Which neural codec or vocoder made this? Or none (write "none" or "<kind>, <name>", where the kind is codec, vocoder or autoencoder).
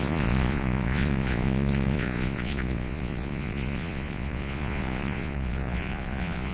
vocoder, Vocos